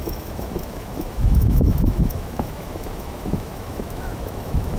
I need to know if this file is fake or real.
fake